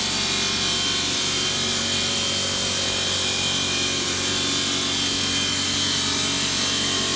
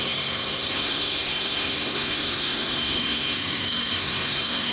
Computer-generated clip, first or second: second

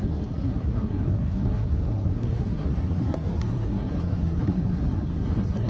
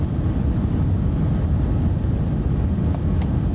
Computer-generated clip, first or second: first